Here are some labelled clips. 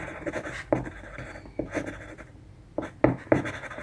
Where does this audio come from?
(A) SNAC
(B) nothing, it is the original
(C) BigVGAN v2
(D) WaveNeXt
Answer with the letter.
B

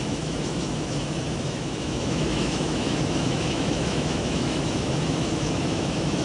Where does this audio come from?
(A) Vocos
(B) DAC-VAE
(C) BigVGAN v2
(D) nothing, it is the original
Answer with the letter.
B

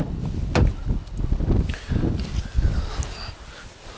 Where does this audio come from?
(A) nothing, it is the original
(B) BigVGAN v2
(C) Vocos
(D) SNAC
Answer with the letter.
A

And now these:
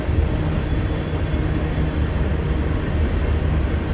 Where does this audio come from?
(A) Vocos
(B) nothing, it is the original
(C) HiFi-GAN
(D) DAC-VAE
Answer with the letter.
B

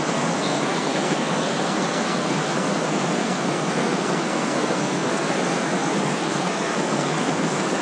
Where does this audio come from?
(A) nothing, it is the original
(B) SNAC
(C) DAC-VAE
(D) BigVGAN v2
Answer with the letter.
B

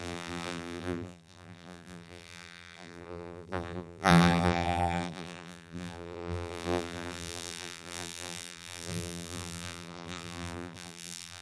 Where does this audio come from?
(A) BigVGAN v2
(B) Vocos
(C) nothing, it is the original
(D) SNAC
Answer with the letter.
A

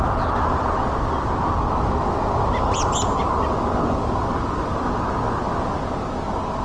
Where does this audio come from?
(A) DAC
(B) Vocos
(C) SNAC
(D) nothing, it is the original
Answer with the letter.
D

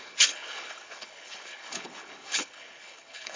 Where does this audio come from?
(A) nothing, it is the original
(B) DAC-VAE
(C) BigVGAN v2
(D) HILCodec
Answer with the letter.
D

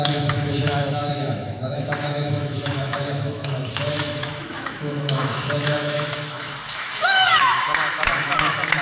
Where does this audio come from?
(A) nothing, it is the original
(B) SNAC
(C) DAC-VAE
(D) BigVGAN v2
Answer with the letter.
C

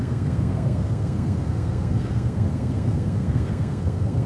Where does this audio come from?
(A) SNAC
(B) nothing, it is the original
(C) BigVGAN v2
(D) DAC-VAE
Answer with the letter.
A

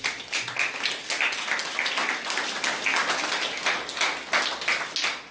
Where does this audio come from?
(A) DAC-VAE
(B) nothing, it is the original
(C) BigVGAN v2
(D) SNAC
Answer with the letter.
B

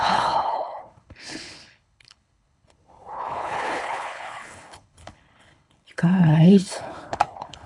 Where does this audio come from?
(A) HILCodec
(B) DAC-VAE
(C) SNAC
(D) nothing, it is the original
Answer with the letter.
A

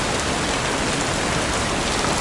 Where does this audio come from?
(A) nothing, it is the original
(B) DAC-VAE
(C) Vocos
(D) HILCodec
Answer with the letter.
A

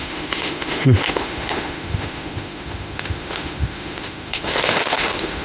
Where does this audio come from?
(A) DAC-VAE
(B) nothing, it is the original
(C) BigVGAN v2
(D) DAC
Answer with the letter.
A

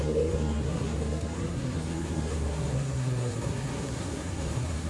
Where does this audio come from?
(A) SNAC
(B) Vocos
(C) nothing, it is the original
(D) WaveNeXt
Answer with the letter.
A